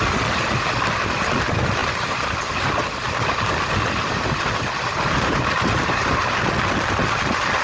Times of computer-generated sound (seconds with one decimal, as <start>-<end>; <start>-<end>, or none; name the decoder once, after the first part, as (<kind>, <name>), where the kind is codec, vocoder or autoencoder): 1.8-2.7 (vocoder, BigVGAN v2); 4.9-6.2